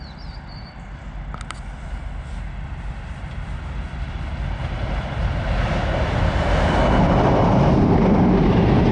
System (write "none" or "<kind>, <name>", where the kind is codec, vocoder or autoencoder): none